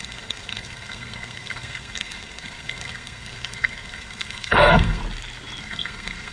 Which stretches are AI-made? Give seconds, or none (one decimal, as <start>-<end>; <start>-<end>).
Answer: 0.0-5.0; 5.6-6.3